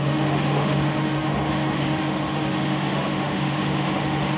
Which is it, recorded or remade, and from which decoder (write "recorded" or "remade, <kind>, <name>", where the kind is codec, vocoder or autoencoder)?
remade, autoencoder, DAC-VAE